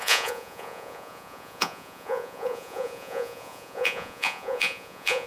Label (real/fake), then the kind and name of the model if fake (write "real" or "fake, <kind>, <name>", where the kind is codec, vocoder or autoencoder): fake, vocoder, Vocos